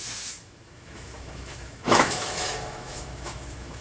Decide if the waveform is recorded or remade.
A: remade